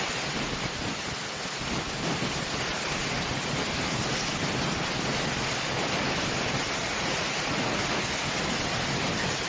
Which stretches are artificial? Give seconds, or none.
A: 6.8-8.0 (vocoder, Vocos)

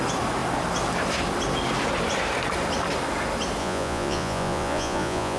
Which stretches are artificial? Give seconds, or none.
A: 3.6-5.4 (vocoder, Vocos)

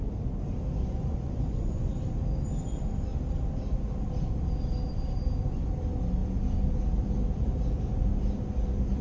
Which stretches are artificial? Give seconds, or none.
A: 0.8-2.0 (vocoder, Vocos)

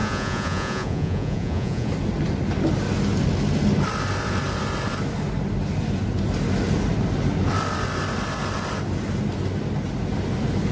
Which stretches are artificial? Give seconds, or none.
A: 0.0-1.9 (vocoder, Vocos)